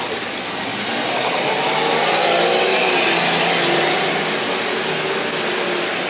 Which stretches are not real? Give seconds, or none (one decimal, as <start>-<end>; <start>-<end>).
none